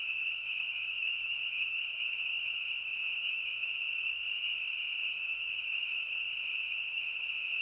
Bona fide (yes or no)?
no